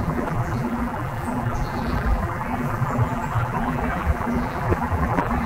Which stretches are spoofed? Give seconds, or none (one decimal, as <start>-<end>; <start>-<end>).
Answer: 0.0-5.5